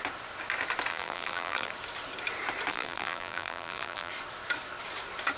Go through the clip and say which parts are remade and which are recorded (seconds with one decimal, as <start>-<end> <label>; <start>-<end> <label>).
0.0-0.9 recorded; 0.9-1.7 remade; 1.7-2.7 recorded; 2.7-4.1 remade; 4.1-5.4 recorded